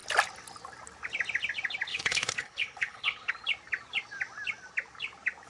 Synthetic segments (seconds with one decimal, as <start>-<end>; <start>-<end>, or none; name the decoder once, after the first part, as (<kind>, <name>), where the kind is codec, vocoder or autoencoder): 1.9-3.3 (codec, HILCodec)